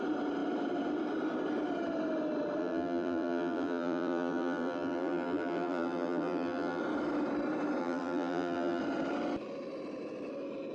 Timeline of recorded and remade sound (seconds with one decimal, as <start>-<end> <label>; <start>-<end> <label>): 0.0-2.6 recorded; 2.6-6.8 remade; 6.8-7.8 recorded; 7.8-8.8 remade; 8.8-10.7 recorded